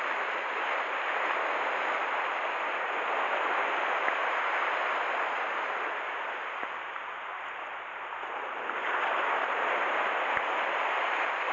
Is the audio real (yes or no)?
yes